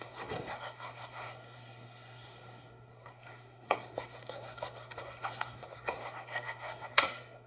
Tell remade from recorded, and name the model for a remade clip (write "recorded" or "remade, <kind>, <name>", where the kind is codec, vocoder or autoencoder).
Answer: remade, codec, SNAC